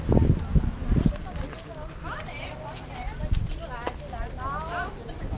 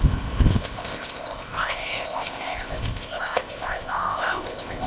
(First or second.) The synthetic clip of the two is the second